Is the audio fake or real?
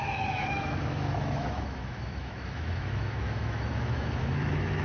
fake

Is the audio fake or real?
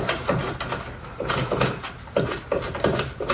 real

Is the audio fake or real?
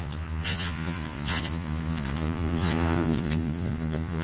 fake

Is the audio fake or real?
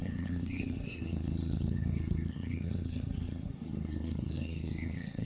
fake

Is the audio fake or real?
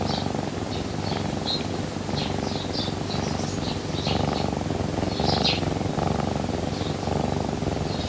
real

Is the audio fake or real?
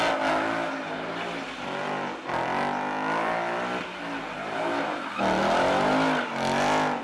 real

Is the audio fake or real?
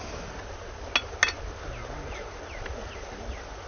real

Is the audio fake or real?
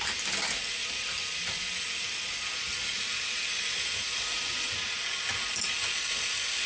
fake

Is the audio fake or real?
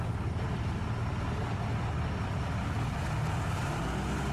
real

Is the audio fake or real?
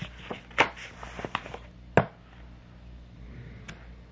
real